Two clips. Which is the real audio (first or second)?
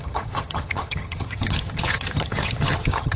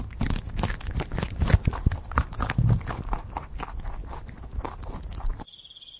second